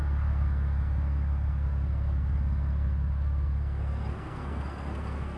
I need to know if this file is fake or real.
fake